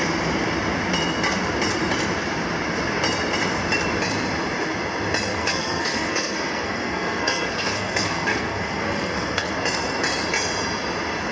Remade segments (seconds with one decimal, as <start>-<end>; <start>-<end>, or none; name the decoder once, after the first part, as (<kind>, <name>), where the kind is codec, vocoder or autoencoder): 5.3-9.5 (codec, SNAC)